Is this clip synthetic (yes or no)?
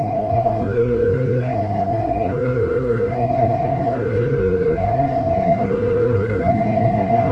yes